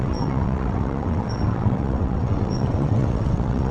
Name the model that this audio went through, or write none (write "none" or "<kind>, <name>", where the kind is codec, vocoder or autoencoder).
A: vocoder, WaveNeXt